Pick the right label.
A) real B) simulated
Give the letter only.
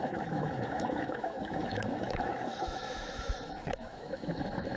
B